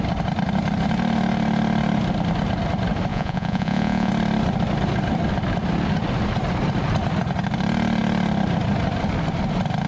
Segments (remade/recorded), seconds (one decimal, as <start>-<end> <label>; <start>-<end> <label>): 0.0-3.1 recorded; 3.1-4.1 remade; 4.1-9.9 recorded